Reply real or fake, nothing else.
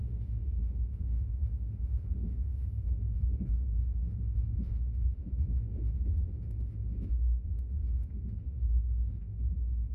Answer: fake